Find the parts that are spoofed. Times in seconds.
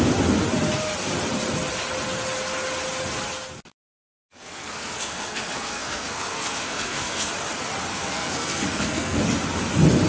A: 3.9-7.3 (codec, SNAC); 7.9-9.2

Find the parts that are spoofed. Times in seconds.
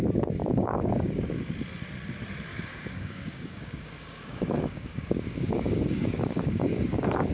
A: 0.4-1.5 (codec, DAC); 2.5-7.3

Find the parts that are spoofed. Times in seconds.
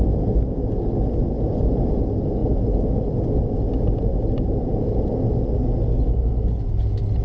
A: none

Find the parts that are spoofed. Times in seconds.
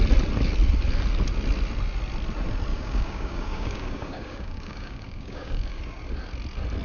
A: 2.7-5.8 (codec, DAC)